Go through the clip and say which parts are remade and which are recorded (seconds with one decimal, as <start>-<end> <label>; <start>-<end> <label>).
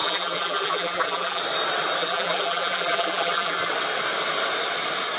0.0-1.4 remade; 1.4-2.0 recorded; 2.0-3.7 remade; 3.7-5.2 recorded